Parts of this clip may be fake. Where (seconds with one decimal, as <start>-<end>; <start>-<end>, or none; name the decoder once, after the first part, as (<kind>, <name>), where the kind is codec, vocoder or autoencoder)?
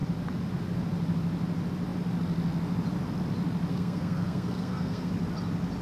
3.7-5.1 (codec, SNAC)